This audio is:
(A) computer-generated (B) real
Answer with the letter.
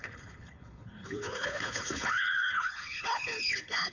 A